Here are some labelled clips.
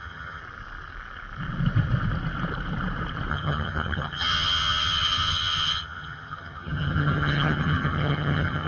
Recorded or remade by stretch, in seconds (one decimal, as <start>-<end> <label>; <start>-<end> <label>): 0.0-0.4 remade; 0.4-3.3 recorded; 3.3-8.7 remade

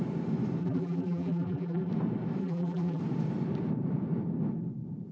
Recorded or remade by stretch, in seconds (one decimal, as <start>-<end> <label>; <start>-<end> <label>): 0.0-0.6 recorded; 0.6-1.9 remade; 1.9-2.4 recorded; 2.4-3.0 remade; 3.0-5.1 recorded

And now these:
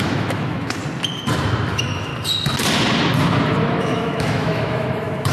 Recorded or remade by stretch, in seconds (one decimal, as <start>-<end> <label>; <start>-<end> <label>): 0.0-0.8 remade; 0.8-1.7 recorded; 1.7-2.1 remade; 2.1-3.8 recorded; 3.8-5.3 remade